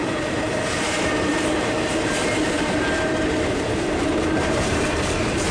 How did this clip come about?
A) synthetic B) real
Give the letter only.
A